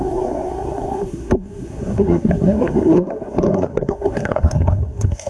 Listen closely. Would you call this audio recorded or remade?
remade